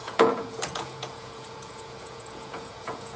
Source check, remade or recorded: remade